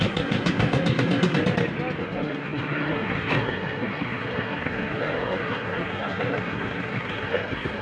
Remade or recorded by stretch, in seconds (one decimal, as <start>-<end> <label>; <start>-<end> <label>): 0.0-1.4 remade; 1.4-2.0 recorded; 2.0-7.8 remade